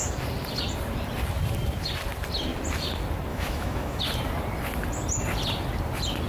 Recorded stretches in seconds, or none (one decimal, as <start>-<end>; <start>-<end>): 0.0-3.3; 4.0-6.3